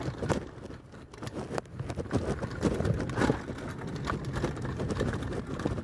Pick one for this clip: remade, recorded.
recorded